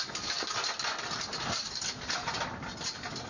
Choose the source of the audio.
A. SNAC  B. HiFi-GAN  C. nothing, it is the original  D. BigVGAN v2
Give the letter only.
C